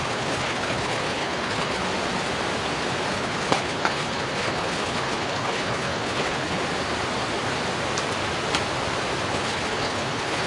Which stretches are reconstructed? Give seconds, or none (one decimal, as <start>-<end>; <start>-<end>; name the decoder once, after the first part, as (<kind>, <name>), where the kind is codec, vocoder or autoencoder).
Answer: 0.0-1.8 (codec, HILCodec); 3.1-6.6; 9.3-10.5

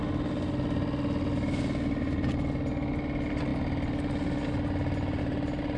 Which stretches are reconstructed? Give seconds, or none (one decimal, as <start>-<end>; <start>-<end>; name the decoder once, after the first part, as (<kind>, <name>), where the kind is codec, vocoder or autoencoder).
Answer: none

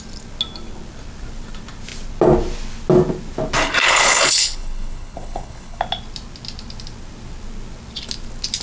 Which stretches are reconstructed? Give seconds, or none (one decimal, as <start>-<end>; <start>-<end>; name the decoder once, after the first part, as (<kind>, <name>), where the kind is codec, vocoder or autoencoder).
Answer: 3.8-5.8 (codec, HILCodec)

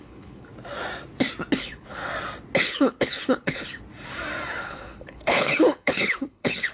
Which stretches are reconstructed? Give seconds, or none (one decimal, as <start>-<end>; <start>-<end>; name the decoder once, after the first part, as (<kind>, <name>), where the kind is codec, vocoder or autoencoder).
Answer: 0.0-0.5 (codec, HILCodec); 1.6-2.0; 2.6-3.7; 4.6-6.7